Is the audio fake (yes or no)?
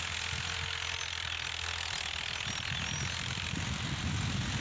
no